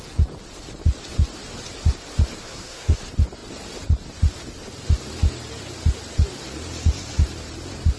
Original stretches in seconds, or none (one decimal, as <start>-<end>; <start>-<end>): 0.0-2.4; 3.0-8.0